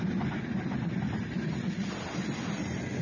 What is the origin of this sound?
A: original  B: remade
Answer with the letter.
A